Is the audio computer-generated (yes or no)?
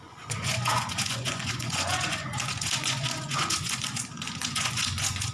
yes